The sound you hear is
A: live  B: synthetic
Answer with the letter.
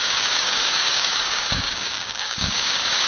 B